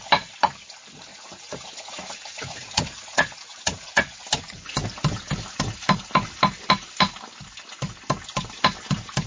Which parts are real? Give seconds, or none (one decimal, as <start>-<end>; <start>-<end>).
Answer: 0.0-1.1; 3.9-9.3